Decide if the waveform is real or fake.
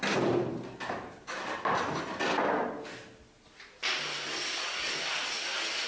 real